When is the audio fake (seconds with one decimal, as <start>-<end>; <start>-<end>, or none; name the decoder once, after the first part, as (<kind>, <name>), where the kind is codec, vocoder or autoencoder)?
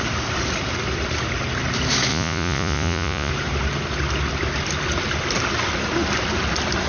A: 2.1-3.3 (vocoder, Vocos)